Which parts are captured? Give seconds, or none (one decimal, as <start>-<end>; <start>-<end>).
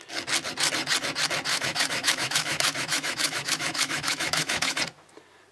0.0-1.5; 4.8-5.5